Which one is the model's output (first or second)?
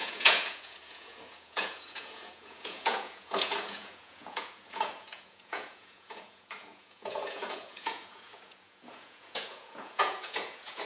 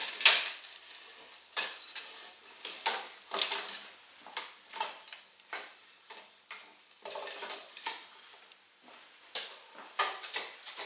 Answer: first